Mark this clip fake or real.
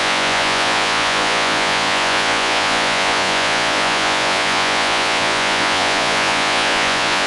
fake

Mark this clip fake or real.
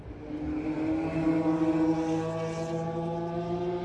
real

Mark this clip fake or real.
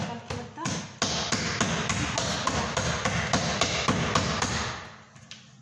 real